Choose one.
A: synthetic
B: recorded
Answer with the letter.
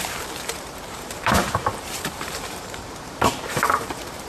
A